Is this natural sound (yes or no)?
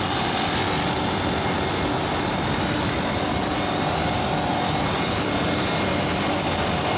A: yes